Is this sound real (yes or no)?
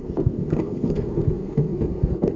no